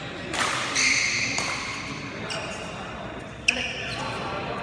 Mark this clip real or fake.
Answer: real